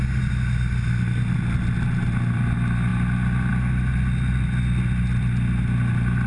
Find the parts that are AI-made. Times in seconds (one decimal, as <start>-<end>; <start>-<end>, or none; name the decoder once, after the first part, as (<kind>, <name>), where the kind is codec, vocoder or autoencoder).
none